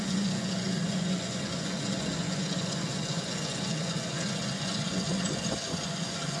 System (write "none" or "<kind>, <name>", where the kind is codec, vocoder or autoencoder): vocoder, Vocos